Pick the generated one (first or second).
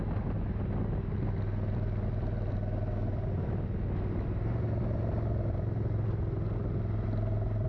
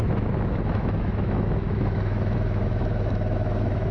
second